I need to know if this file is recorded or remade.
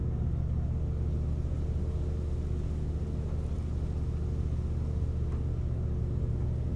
recorded